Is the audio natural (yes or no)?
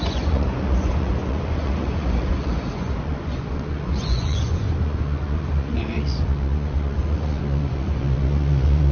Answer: no